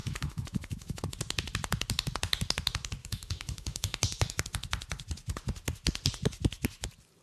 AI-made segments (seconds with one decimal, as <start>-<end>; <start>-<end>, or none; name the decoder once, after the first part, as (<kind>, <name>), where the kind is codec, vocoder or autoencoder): 0.0-1.0 (autoencoder, DAC-VAE); 3.0-4.4